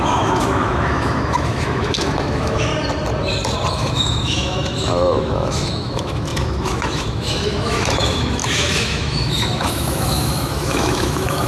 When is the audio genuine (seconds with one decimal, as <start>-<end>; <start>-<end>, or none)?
2.7-3.7